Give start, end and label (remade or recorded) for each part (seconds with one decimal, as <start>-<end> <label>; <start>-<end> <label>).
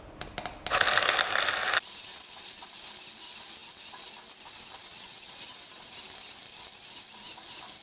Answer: 0.0-2.0 recorded; 2.0-2.7 remade; 2.7-4.8 recorded; 4.8-5.7 remade; 5.7-7.8 recorded